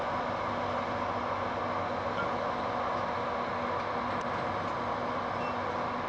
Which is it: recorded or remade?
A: recorded